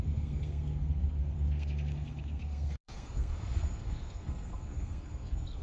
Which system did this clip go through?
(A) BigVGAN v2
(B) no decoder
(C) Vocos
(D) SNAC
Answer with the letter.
D